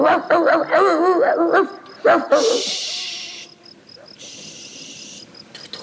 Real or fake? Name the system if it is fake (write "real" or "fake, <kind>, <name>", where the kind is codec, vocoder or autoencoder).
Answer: real